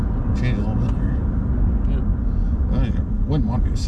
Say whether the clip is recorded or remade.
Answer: recorded